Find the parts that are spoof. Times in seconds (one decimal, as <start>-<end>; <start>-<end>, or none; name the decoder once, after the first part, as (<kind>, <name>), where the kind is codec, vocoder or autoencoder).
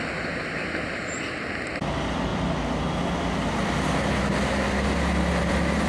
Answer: none